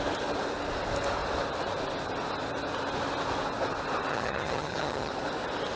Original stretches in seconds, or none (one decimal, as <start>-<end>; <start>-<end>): 0.0-4.1; 5.1-5.8